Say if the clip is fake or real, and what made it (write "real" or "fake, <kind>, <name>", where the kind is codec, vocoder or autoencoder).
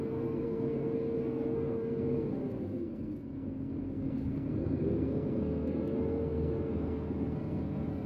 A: fake, codec, SNAC